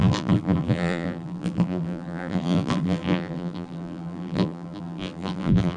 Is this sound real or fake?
fake